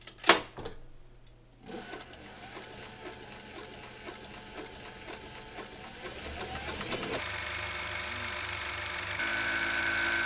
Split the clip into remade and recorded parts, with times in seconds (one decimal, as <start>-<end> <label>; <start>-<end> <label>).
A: 0.0-10.3 recorded